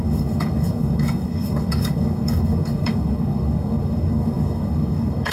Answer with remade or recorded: remade